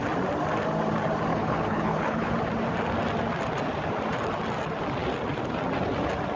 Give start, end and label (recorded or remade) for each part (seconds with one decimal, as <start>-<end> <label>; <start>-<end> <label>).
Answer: 0.0-1.3 recorded; 1.3-2.3 remade; 2.3-6.4 recorded